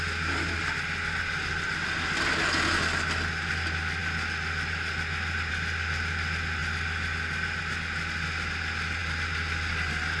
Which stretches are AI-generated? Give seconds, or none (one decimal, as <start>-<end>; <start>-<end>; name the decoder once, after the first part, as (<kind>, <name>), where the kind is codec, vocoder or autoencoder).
none